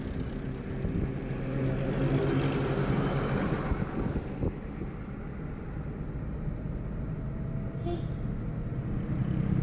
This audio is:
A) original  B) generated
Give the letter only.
A